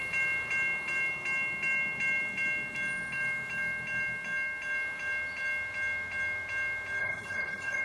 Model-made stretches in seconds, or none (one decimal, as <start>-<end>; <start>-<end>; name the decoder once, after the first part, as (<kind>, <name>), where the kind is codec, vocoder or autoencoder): 7.0-7.8 (codec, HILCodec)